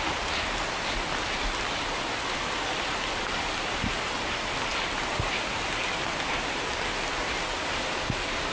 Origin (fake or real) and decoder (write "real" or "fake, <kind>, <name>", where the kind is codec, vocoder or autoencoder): fake, vocoder, BigVGAN v2